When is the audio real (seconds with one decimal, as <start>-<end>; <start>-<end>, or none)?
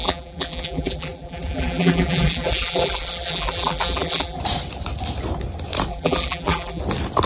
4.4-5.9; 6.8-7.3